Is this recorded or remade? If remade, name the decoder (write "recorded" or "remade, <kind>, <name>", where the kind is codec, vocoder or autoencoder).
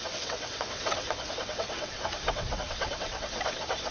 remade, vocoder, WaveNeXt